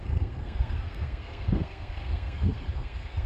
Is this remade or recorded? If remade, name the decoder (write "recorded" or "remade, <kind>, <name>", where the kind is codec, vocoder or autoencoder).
remade, codec, SNAC